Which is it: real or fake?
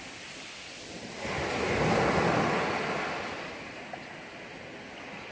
real